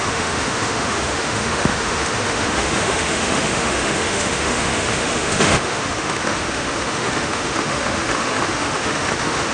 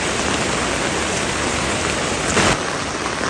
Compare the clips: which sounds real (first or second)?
second